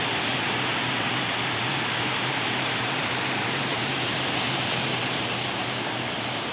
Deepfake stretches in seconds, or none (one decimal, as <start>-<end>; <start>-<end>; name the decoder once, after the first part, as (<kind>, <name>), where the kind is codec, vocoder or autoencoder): 1.7-5.6 (vocoder, BigVGAN v2)